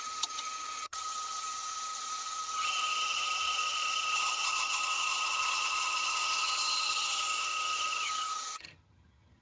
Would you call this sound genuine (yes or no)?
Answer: no